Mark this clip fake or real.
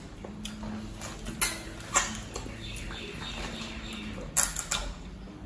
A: real